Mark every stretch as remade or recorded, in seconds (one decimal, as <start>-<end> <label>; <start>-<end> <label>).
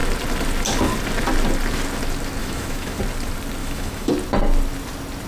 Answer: 0.0-2.4 recorded; 2.4-3.0 remade; 3.0-3.6 recorded; 3.6-4.1 remade; 4.1-5.3 recorded